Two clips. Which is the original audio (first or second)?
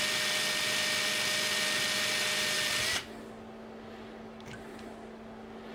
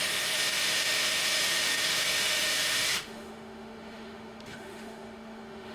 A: first